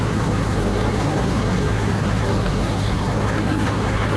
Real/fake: fake